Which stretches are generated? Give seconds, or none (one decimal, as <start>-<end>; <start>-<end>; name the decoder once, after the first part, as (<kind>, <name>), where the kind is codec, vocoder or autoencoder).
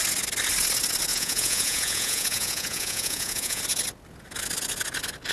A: 1.1-3.6 (vocoder, Vocos)